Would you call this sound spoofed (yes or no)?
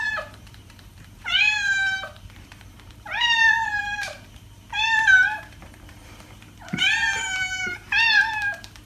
yes